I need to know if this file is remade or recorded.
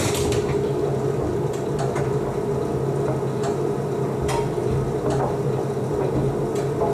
recorded